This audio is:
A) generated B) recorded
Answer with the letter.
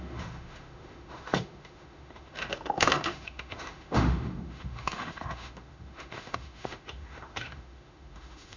A